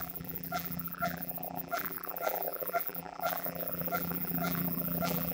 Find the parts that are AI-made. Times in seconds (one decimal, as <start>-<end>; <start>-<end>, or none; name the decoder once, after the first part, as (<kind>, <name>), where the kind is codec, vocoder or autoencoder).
0.0-5.3 (vocoder, BigVGAN v2)